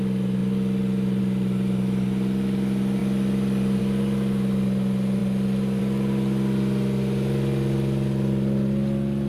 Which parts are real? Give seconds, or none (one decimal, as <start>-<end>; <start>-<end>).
0.0-9.3